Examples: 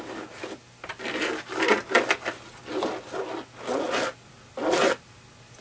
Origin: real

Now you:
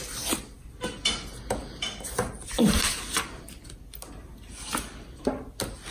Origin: real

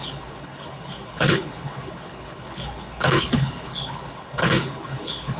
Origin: fake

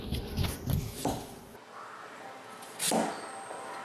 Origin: real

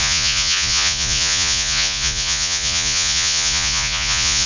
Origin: fake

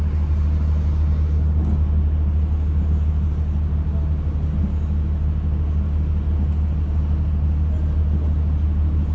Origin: real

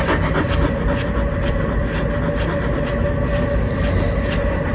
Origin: real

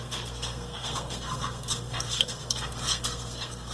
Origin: fake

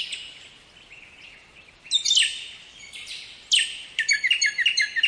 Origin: real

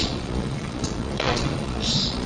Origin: fake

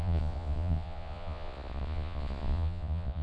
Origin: fake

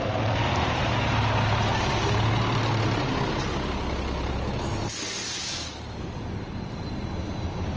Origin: real